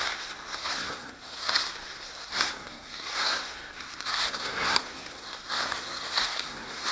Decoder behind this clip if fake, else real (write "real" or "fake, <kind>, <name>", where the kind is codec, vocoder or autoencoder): fake, codec, SNAC